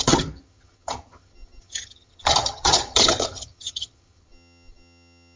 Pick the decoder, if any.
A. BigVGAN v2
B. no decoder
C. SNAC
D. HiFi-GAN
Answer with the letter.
D